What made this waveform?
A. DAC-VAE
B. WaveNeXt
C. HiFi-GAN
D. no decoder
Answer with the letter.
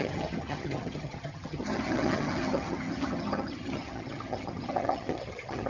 C